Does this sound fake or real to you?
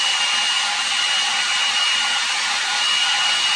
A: real